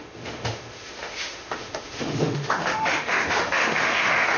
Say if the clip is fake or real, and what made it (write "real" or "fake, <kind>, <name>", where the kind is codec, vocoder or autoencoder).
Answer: fake, autoencoder, DAC-VAE